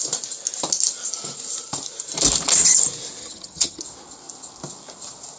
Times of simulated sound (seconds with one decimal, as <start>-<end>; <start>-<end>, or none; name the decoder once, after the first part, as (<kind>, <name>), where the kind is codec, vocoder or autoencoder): 3.2-3.8 (vocoder, HiFi-GAN)